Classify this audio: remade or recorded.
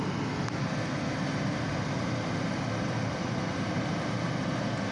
recorded